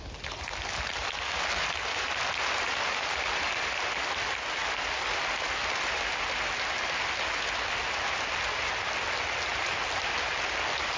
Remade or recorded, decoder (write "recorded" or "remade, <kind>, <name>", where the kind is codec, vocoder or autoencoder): recorded